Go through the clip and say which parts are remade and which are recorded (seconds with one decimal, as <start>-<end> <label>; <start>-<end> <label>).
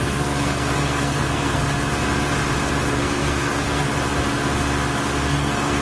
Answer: 0.0-1.6 remade; 1.6-2.8 recorded; 2.8-3.9 remade; 3.9-5.3 recorded; 5.3-5.8 remade